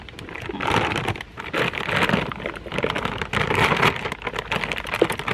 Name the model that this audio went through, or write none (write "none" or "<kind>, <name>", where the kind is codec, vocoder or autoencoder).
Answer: none